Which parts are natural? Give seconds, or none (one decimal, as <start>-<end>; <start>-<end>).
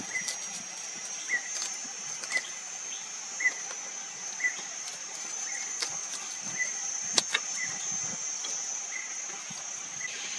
0.0-1.8; 2.5-6.0; 6.9-10.4